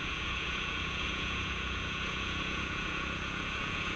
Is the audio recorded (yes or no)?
no